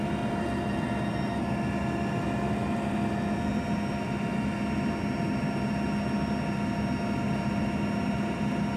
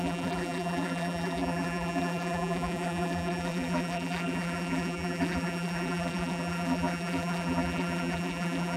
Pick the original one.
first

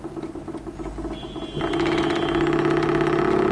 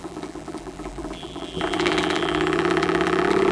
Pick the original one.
first